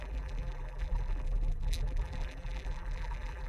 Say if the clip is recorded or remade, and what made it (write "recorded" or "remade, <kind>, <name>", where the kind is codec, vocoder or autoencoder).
remade, vocoder, BigVGAN v2